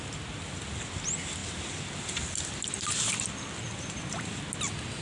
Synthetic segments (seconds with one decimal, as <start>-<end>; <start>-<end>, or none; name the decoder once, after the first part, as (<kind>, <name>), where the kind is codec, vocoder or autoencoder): none